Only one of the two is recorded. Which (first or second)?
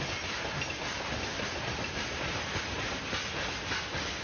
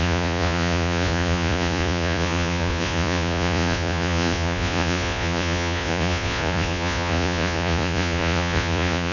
first